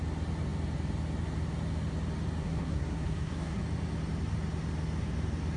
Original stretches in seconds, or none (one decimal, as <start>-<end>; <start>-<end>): 0.0-2.4; 3.6-5.6

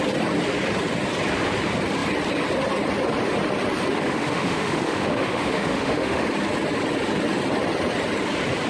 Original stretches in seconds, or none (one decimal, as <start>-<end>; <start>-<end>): 0.0-3.9; 6.2-8.7

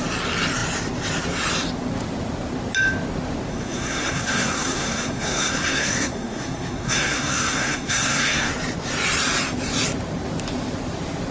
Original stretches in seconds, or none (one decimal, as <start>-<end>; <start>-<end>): 0.0-3.5; 8.5-11.3

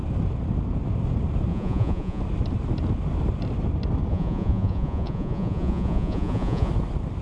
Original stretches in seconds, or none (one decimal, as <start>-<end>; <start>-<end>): 0.0-1.5; 2.2-4.1; 6.7-7.2